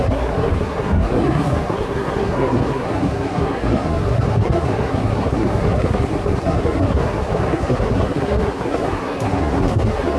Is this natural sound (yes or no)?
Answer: no